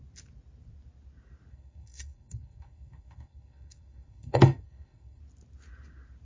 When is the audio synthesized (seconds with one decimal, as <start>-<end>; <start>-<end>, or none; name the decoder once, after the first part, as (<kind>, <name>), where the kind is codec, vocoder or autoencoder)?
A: 1.5-5.2 (codec, SNAC)